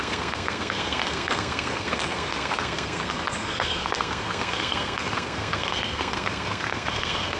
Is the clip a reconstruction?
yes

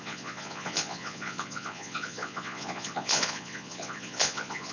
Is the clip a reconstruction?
yes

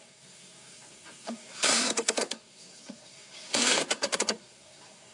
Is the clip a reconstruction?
yes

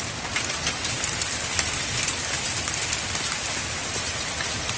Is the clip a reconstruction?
no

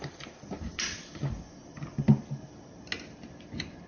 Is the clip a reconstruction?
no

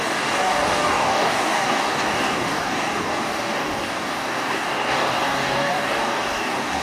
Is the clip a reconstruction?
yes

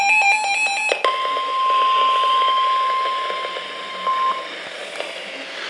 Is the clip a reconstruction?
no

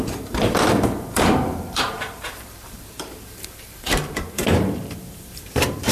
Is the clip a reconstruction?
yes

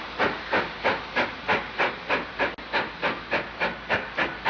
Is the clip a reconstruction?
no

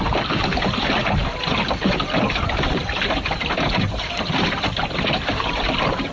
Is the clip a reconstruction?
no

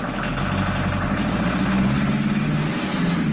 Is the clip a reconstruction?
no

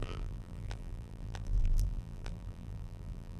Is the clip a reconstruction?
yes